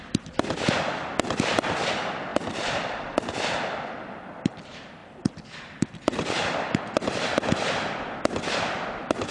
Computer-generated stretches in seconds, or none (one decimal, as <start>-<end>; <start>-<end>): 2.3-3.3; 5.0-7.1